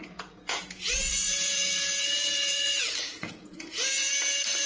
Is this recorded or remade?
remade